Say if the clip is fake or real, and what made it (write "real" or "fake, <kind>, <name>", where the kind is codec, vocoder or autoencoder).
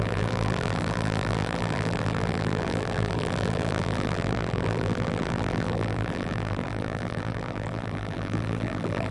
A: fake, vocoder, BigVGAN v2